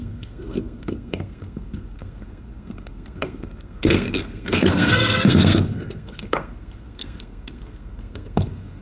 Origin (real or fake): fake